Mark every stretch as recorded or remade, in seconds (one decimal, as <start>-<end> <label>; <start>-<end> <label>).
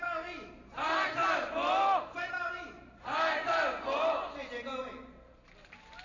0.0-6.0 recorded